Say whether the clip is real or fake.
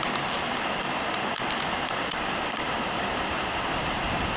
real